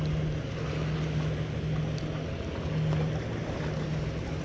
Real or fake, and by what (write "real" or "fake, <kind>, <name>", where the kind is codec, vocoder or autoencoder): real